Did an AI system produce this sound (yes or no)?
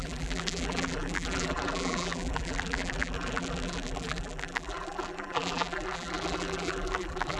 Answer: yes